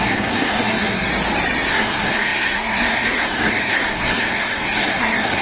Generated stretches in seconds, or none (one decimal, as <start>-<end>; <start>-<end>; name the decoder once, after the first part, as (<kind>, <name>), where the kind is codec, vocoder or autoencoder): 0.0-1.1 (codec, SNAC); 1.7-5.4